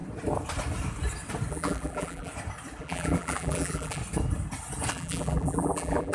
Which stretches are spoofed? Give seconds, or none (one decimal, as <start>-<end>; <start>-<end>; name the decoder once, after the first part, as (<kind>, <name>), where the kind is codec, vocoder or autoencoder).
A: 1.5-2.3 (vocoder, BigVGAN v2); 2.8-4.0; 4.9-6.1